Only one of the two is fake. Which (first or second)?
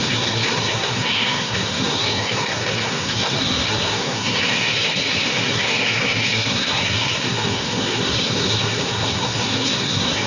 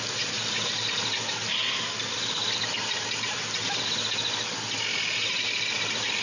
first